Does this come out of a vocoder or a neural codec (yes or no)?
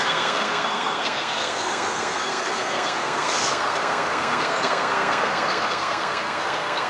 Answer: yes